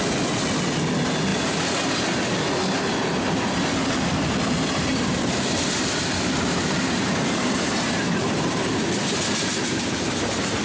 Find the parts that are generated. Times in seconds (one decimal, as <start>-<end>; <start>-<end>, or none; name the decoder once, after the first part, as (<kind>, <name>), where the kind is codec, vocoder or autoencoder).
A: 4.9-8.7 (vocoder, BigVGAN v2)